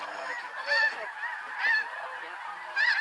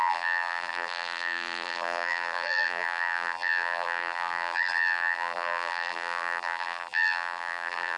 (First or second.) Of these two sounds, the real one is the first